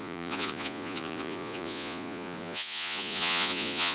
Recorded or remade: remade